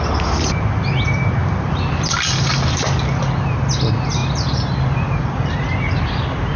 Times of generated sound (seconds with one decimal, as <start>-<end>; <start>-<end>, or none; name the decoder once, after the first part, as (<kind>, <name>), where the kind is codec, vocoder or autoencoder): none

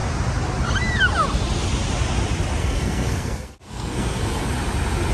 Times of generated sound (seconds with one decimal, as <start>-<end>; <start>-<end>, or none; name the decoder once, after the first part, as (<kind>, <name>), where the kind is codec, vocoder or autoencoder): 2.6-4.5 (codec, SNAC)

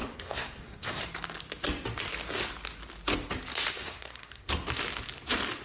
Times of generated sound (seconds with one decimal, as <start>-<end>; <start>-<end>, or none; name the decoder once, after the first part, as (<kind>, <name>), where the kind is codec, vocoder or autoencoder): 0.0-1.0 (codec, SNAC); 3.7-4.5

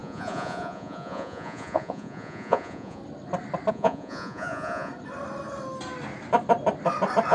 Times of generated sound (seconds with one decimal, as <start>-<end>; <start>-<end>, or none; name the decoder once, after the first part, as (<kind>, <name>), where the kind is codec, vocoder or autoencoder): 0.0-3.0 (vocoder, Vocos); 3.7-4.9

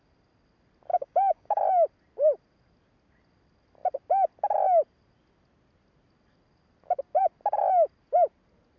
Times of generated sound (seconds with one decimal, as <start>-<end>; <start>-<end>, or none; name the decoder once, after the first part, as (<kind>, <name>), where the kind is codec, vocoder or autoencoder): 0.9-1.6 (codec, DAC)

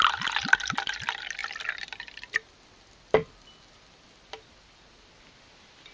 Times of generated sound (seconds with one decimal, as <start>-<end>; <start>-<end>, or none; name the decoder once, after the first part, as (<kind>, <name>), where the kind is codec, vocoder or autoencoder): none

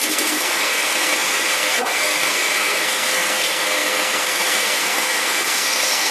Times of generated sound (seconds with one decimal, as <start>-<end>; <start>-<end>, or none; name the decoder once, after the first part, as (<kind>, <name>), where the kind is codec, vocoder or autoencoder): 0.0-6.1 (codec, SNAC)